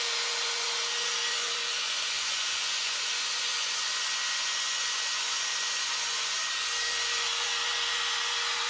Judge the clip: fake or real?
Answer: fake